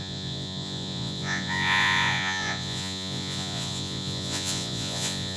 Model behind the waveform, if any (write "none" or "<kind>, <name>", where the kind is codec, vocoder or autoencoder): vocoder, Vocos